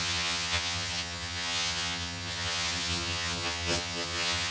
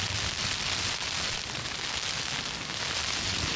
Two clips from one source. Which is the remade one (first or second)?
first